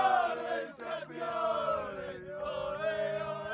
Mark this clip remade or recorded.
recorded